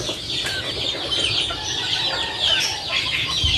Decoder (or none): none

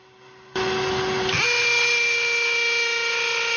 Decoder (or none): none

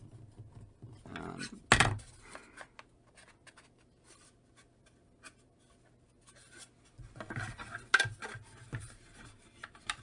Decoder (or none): none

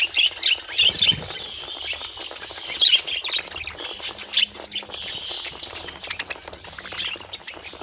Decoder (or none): none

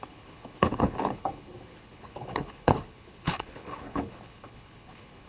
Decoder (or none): codec, HILCodec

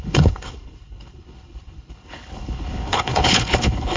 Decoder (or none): codec, HILCodec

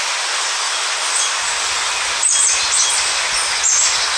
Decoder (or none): none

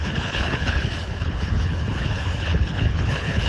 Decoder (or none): codec, HILCodec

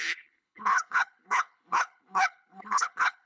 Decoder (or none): codec, HILCodec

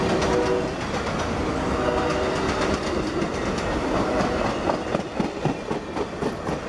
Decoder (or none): none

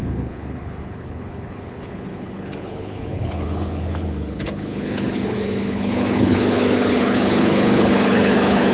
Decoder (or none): codec, HILCodec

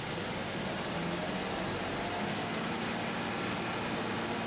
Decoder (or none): none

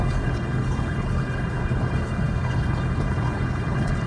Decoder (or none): codec, HILCodec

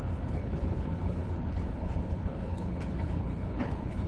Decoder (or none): codec, HILCodec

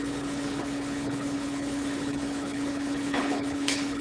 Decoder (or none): codec, HILCodec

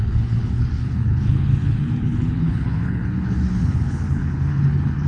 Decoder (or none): codec, HILCodec